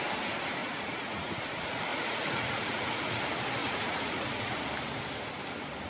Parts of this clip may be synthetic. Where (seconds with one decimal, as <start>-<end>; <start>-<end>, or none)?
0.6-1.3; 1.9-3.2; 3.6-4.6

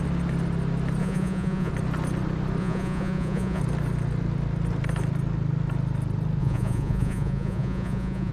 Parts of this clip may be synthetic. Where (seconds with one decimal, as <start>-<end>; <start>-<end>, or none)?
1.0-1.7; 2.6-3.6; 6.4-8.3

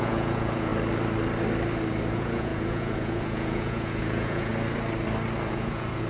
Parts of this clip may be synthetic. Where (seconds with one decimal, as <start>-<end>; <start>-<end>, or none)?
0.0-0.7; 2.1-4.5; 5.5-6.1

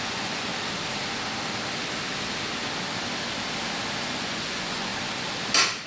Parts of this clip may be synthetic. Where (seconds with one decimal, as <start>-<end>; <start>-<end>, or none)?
0.0-0.5; 4.0-4.9